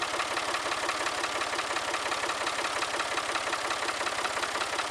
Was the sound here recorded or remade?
recorded